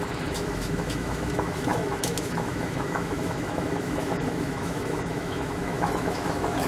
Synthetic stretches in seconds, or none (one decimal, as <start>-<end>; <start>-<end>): 0.0-6.7